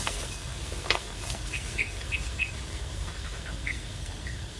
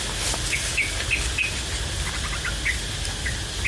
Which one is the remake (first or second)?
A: first